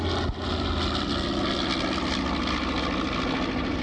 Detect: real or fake real